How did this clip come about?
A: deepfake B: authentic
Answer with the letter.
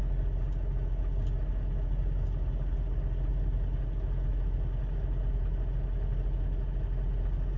B